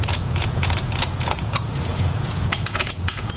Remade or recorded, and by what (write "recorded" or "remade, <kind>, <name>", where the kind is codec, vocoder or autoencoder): remade, vocoder, Vocos